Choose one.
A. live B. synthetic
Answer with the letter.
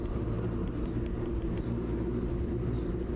A